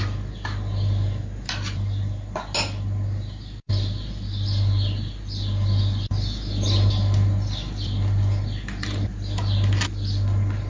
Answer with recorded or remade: recorded